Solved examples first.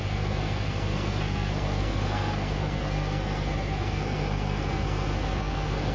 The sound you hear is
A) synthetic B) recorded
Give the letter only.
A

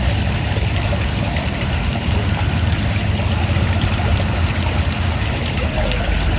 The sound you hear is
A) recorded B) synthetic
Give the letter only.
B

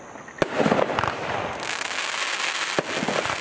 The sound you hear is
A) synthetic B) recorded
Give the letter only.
B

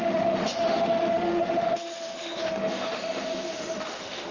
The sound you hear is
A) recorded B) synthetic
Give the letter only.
B